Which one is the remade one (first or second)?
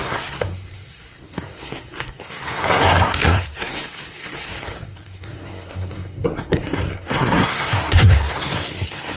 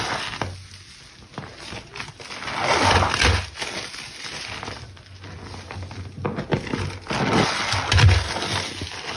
first